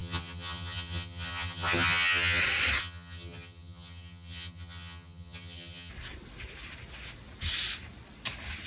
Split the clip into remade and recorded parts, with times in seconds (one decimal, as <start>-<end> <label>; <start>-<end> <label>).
0.0-2.4 remade; 2.4-2.8 recorded; 2.8-5.9 remade; 5.9-8.7 recorded